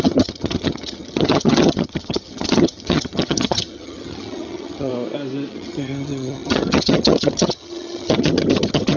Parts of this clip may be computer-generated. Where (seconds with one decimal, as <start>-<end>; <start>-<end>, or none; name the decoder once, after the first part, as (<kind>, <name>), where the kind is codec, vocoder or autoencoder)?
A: 0.0-4.9 (vocoder, HiFi-GAN); 5.5-9.0